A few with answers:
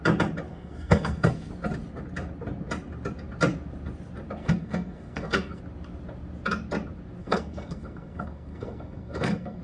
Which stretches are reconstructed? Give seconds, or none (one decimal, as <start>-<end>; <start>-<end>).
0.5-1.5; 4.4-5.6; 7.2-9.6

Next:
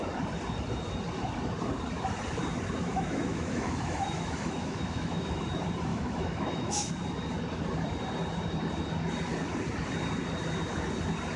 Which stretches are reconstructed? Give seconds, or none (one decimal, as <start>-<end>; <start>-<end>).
2.8-5.4; 5.9-6.9

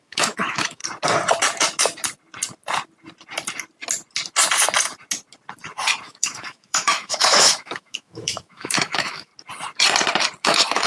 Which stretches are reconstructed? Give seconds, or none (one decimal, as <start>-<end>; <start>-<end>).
0.0-0.8; 6.0-9.3; 10.4-10.9

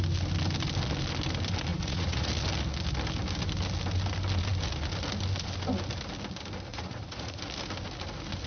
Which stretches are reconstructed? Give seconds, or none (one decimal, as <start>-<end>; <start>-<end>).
1.7-2.3; 6.7-7.4